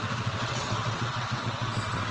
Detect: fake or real fake